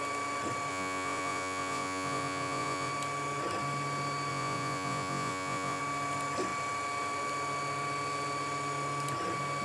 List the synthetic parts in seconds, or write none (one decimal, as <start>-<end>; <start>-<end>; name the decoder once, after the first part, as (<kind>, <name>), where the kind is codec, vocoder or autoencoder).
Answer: 0.7-2.9 (vocoder, Vocos); 4.3-5.8